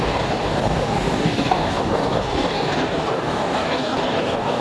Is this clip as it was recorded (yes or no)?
no